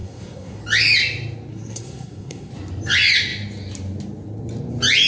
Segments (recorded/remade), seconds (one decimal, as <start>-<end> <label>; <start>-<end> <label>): 0.0-0.6 remade; 0.6-1.5 recorded; 1.5-2.5 remade; 2.5-5.1 recorded